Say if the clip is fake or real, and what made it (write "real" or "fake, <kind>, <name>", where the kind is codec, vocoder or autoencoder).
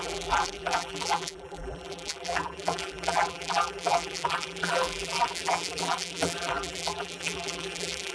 fake, vocoder, BigVGAN v2